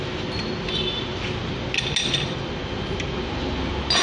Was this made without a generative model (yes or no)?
yes